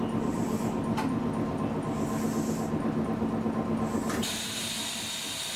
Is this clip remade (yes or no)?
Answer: no